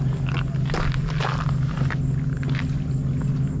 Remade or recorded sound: recorded